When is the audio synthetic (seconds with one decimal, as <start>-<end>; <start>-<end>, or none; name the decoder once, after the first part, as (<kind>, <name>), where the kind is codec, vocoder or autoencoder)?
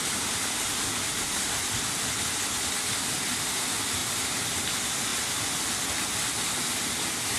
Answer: 0.0-0.7 (vocoder, BigVGAN v2); 4.0-4.6